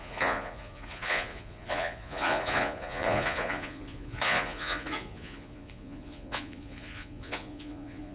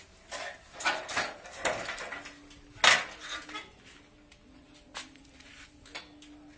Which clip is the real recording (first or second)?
second